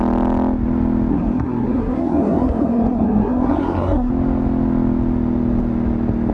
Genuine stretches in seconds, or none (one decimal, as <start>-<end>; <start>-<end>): 0.0-1.1; 4.1-6.3